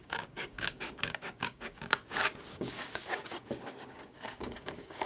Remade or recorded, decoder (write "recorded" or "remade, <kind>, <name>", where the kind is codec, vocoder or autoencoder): remade, codec, DAC